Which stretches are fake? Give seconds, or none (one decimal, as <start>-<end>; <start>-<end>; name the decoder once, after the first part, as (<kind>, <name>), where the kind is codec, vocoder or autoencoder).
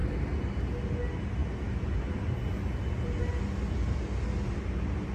none